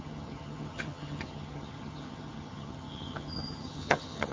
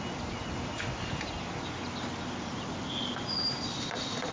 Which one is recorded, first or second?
second